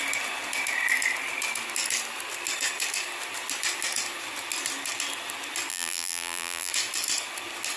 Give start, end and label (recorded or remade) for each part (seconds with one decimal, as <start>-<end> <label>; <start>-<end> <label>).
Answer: 0.0-5.7 recorded; 5.7-6.7 remade; 6.7-7.8 recorded